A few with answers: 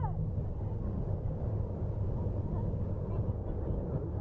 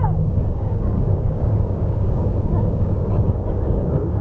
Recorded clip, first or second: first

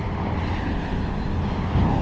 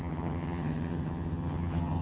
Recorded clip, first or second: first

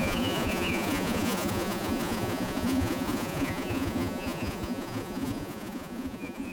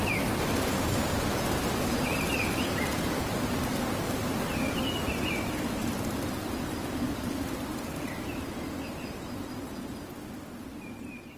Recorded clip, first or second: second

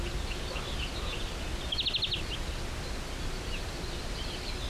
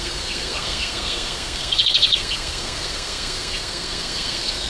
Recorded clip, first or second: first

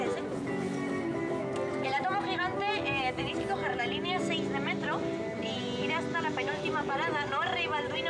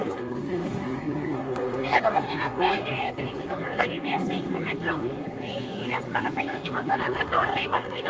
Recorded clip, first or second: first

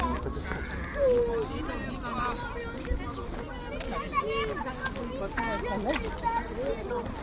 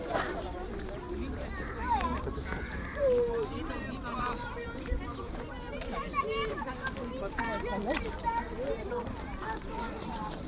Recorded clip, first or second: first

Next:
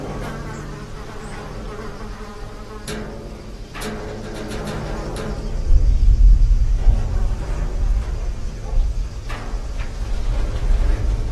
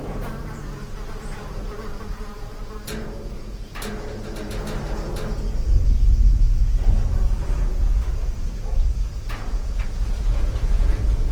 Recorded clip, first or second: first